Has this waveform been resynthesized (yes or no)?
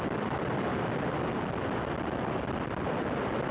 no